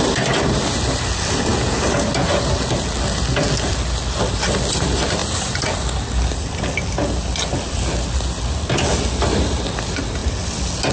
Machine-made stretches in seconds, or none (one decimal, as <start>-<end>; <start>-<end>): none